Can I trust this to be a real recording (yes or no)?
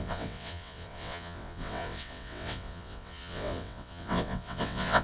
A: no